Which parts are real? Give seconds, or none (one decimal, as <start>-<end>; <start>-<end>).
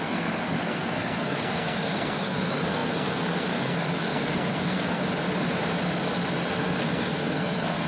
5.0-6.5